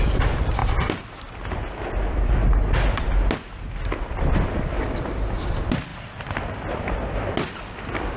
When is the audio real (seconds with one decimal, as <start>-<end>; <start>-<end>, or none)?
0.0-8.2